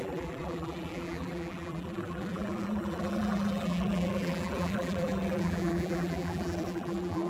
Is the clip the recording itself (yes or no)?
no